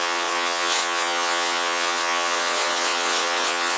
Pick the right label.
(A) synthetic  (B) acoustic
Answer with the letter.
A